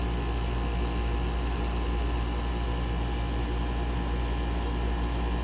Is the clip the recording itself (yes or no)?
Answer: yes